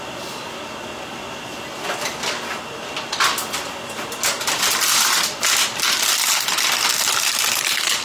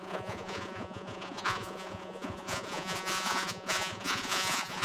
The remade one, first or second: second